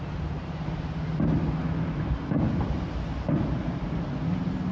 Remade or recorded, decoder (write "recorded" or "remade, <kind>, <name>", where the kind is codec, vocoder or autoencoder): recorded